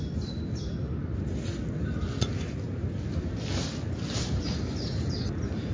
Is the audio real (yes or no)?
yes